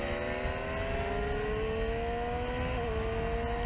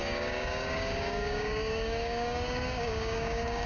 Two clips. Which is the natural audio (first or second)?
first